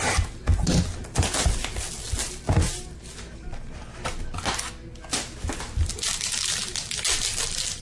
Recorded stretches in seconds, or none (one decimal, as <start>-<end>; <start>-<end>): 0.0-7.8